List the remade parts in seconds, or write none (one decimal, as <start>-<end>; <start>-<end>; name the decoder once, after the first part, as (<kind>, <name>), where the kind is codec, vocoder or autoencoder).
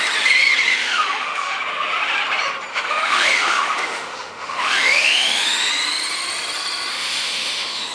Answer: 0.7-1.6 (autoencoder, DAC-VAE); 2.7-5.7; 6.9-7.9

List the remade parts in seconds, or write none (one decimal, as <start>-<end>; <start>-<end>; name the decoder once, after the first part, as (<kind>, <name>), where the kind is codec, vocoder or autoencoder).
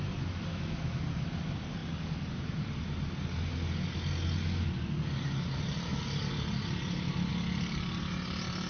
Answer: 0.5-1.0 (autoencoder, DAC-VAE)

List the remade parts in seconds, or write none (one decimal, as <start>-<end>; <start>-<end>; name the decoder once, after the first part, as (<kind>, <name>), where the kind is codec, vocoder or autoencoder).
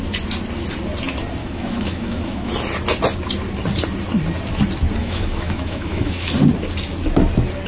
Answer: 1.4-2.5 (autoencoder, DAC-VAE); 5.0-6.3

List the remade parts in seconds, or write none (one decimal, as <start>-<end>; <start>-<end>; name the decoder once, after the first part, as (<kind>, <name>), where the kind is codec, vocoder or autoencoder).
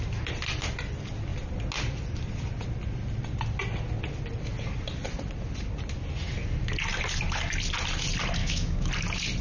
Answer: 8.4-8.9 (autoencoder, DAC-VAE)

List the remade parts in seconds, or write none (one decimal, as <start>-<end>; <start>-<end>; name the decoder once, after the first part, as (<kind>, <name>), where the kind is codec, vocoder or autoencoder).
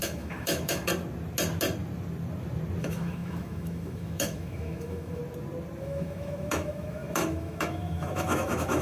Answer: 0.0-0.9 (autoencoder, DAC-VAE); 2.8-5.2; 5.8-8.8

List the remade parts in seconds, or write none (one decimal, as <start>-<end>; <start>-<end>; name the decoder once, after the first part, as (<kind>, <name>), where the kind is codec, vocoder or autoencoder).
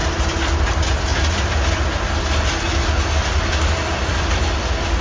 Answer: none